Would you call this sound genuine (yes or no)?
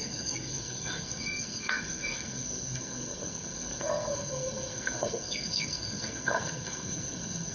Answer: no